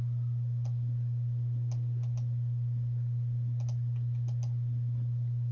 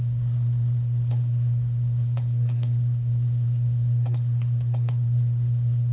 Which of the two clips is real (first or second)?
first